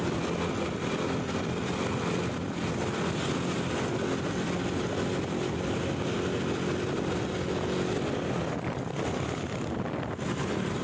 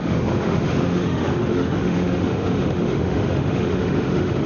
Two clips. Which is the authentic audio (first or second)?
first